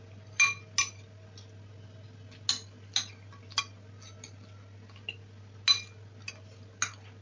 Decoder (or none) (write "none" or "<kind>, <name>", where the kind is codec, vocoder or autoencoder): none